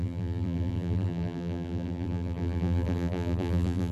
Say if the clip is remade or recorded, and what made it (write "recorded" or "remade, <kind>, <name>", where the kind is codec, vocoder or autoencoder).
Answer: remade, vocoder, BigVGAN v2